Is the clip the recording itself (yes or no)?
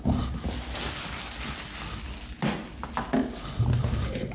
yes